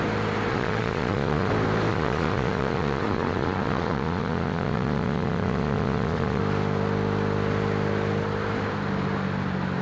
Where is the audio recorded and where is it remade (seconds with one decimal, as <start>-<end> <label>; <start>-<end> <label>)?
0.0-0.5 recorded; 0.5-1.5 remade; 1.5-1.9 recorded; 1.9-6.4 remade; 6.4-9.8 recorded